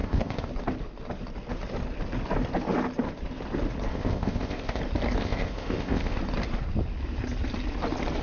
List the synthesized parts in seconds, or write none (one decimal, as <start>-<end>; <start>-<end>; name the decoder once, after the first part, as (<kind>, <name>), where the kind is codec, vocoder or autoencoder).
0.0-0.5 (codec, ZipCodec); 3.9-4.8; 5.2-6.2